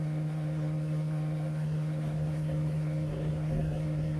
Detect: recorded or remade remade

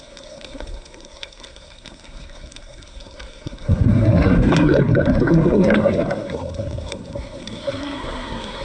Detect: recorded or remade remade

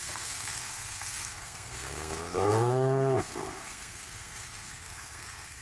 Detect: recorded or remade remade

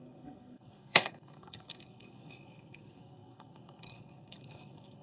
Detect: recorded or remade remade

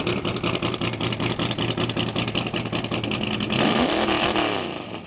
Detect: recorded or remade recorded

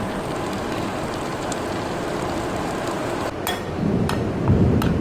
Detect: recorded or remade recorded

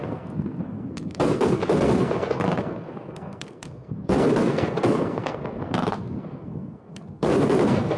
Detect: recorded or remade remade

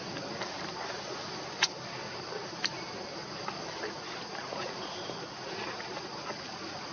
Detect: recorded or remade recorded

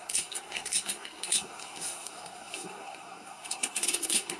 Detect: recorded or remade remade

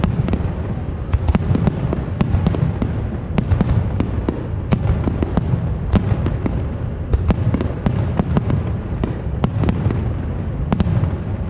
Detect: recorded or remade recorded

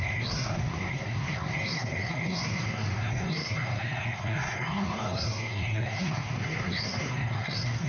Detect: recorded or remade remade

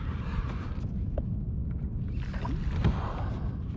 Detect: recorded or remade recorded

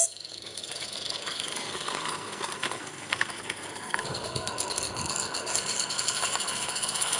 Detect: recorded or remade remade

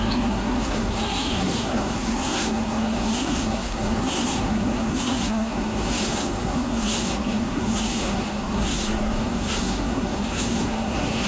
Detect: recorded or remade remade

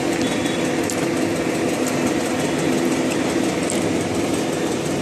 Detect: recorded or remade recorded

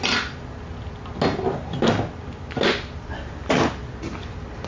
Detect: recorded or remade recorded